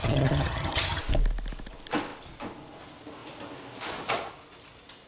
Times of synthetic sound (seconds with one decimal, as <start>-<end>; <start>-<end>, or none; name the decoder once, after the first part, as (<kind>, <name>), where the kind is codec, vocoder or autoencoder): 0.0-1.0 (vocoder, HiFi-GAN)